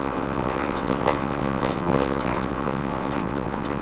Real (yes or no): no